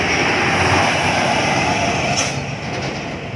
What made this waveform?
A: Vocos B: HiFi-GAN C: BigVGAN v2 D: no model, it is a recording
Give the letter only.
D